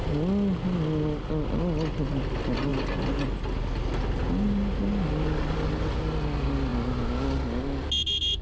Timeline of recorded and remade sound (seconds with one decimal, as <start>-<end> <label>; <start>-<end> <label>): 0.0-8.4 recorded